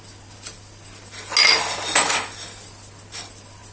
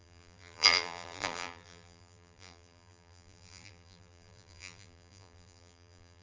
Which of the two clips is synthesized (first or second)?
second